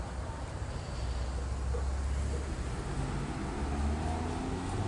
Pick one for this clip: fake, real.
real